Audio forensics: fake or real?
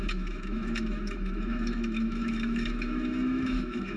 fake